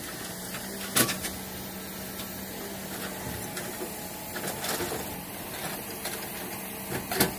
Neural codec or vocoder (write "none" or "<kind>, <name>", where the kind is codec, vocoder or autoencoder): none